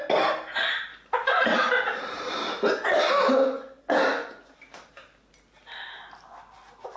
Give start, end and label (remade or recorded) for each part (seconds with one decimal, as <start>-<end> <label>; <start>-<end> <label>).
0.0-0.9 recorded; 0.9-3.0 remade; 3.0-4.1 recorded; 4.1-4.9 remade; 4.9-7.0 recorded